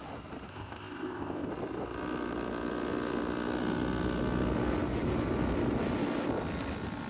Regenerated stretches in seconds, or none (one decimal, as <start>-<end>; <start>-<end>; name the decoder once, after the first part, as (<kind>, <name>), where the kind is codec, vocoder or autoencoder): 0.5-1.5 (codec, ZipCodec)